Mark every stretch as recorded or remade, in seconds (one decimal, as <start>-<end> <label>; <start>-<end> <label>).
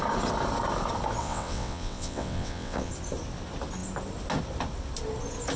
0.0-1.2 recorded; 1.2-2.9 remade; 2.9-5.6 recorded